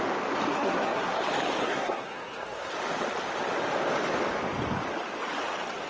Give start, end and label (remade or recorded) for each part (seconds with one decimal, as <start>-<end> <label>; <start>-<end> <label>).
0.0-0.5 recorded; 0.5-1.2 remade; 1.2-1.6 recorded; 1.6-2.7 remade; 2.7-5.9 recorded